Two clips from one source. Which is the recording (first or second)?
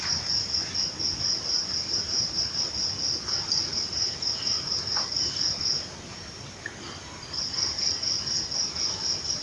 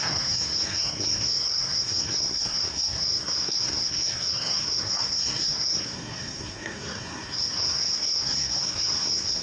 first